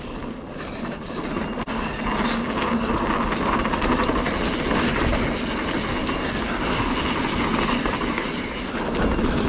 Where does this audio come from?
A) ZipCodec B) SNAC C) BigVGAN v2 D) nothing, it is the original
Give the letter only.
D